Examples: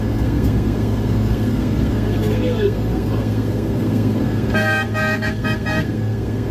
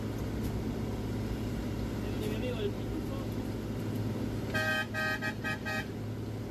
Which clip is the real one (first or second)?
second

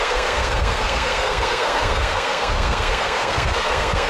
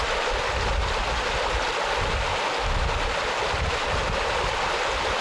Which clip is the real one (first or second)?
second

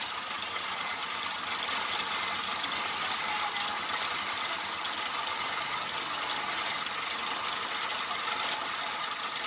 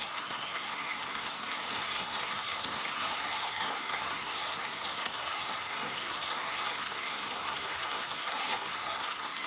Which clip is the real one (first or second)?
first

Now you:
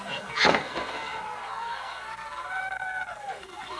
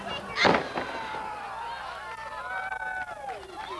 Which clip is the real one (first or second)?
second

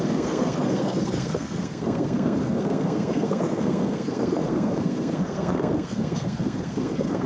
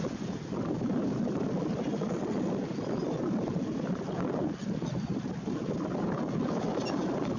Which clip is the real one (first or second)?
second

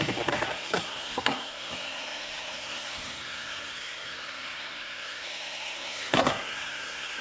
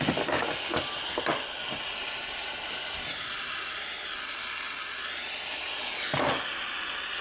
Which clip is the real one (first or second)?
second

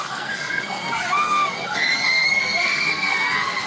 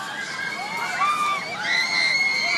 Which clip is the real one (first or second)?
second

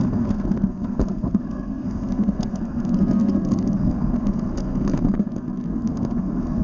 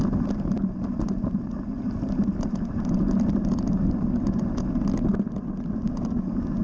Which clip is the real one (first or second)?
second